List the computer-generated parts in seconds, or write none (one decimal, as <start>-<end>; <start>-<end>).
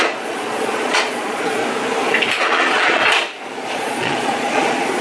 0.0-1.6; 2.4-3.0; 3.7-5.0